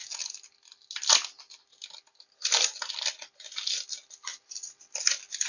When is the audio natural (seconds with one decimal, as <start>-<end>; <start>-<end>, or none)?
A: 0.0-5.5